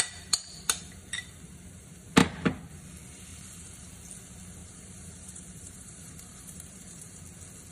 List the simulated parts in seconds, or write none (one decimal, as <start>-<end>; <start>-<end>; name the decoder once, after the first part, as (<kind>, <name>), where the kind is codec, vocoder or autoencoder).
3.3-3.9 (vocoder, BigVGAN v2); 4.6-7.2